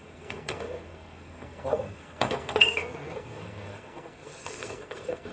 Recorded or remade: remade